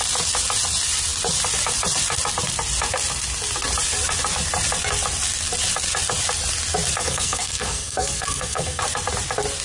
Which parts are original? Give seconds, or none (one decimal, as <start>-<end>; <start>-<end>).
0.0-7.0; 8.8-9.6

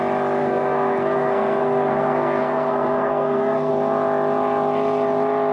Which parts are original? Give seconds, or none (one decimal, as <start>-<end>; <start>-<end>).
0.0-0.4; 3.7-5.5

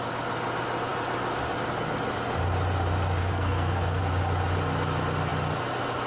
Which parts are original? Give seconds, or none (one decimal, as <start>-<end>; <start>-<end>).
0.0-3.2; 4.0-6.1